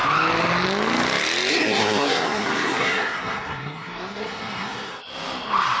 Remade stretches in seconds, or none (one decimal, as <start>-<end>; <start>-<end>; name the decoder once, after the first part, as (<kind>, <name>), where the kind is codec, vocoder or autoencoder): 1.5-5.0 (codec, SNAC)